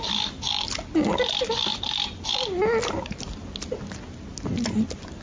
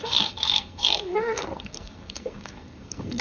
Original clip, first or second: first